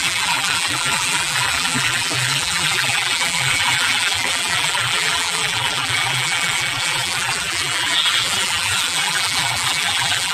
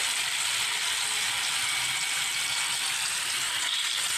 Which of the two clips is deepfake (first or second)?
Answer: first